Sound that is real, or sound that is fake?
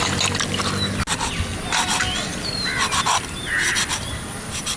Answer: real